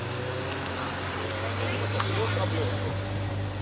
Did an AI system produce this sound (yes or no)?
no